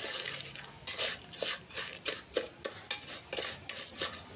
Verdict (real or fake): real